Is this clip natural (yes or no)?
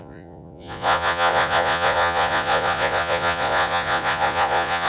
no